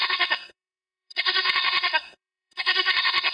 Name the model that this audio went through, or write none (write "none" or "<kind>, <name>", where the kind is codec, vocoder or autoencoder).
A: codec, SNAC